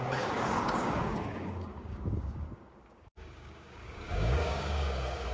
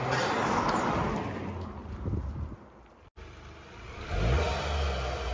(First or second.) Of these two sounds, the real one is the second